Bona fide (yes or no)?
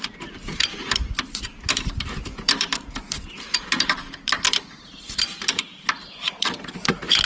no